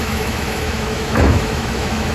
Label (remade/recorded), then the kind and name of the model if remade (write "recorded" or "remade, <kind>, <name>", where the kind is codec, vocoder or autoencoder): remade, autoencoder, DAC-VAE